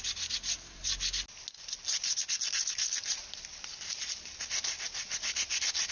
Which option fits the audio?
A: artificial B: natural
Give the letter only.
B